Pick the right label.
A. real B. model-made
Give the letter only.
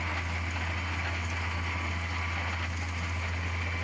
A